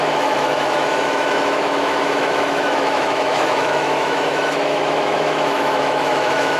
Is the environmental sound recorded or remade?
remade